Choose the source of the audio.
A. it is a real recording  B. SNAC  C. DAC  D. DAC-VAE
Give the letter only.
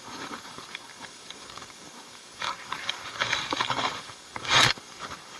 C